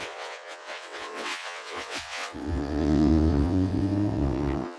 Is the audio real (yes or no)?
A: no